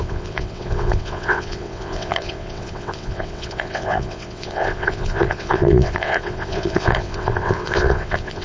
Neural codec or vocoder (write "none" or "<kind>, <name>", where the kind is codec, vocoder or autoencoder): vocoder, WaveNeXt